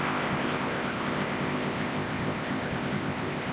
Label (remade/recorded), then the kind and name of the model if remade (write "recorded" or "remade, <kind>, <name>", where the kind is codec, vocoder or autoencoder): remade, codec, ZipCodec